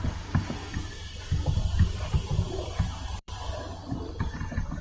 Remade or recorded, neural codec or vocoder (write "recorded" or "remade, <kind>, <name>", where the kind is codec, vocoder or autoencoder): remade, vocoder, BigVGAN v2